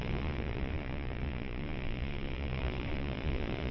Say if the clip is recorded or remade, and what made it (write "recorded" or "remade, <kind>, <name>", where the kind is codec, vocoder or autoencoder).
remade, vocoder, Vocos